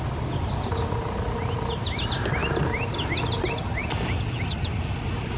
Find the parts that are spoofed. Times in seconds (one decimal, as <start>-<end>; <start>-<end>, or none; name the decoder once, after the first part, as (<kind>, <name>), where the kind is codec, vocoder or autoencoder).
none